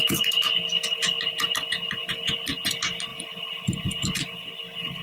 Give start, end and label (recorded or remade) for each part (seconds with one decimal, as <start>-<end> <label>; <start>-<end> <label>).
0.0-3.1 recorded; 3.1-4.5 remade; 4.5-5.0 recorded